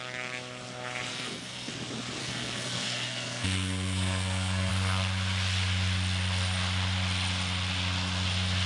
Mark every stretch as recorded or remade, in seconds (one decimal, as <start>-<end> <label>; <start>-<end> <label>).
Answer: 0.0-1.1 recorded; 1.1-1.7 remade; 1.7-2.2 recorded; 2.2-4.7 remade; 4.7-8.7 recorded